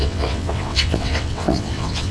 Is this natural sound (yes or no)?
no